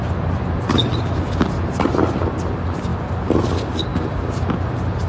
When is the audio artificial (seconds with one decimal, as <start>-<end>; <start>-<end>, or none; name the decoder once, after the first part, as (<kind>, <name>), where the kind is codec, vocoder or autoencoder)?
none

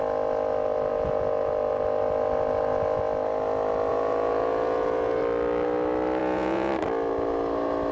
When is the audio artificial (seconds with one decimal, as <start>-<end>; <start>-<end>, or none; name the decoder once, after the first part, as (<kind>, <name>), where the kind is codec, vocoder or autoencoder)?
0.9-1.5 (vocoder, Vocos); 3.9-5.2; 6.2-6.7

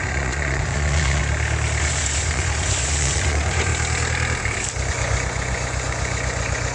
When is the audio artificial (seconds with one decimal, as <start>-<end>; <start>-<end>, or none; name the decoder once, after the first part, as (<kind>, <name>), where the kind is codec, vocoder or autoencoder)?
0.0-1.2 (vocoder, Vocos); 1.8-3.7; 4.9-6.7

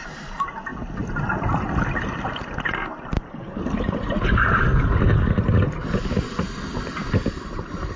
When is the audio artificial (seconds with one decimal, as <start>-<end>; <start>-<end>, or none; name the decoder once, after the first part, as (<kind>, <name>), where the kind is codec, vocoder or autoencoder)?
none

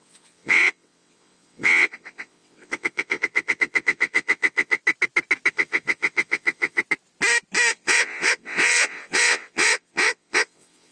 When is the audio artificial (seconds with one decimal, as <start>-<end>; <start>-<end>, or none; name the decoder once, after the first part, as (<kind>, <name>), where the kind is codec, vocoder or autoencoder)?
0.0-4.8 (vocoder, WaveNeXt); 5.5-6.8; 7.7-10.9